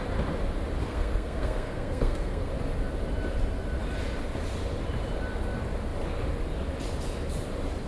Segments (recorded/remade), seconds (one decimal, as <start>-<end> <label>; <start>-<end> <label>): 0.0-0.8 recorded; 0.8-2.5 remade; 2.5-7.9 recorded